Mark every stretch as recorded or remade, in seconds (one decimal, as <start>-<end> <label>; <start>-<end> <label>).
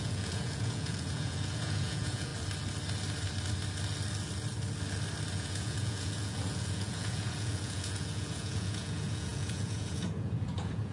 0.0-2.3 remade; 2.3-5.3 recorded; 5.3-10.9 remade